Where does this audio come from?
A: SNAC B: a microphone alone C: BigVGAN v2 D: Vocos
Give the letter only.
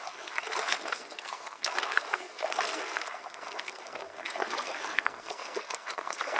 A